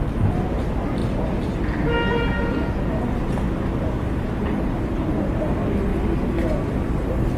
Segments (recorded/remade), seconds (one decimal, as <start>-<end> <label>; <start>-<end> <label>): 0.0-7.4 recorded